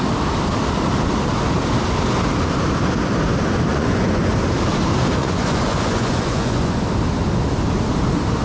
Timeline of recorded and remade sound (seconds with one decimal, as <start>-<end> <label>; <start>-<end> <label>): 0.0-3.7 recorded; 3.7-4.3 remade; 4.3-5.2 recorded; 5.2-6.8 remade; 6.8-8.4 recorded